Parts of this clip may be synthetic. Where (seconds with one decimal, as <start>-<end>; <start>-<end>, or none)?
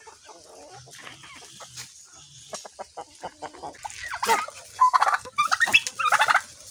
4.7-5.3